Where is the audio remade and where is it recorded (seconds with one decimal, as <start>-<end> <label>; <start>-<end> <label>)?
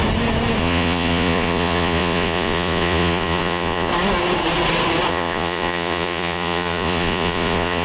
0.0-0.6 recorded; 0.6-3.9 remade; 3.9-5.1 recorded; 5.1-7.8 remade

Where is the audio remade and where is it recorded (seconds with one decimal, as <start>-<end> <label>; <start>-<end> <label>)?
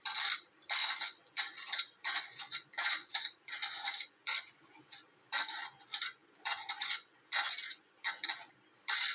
0.0-0.8 recorded; 0.8-4.8 remade; 4.8-6.2 recorded; 6.2-8.5 remade; 8.5-9.1 recorded